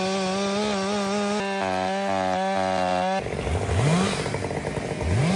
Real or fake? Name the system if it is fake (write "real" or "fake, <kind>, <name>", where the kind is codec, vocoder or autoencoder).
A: real